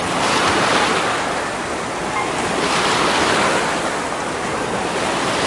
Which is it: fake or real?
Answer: real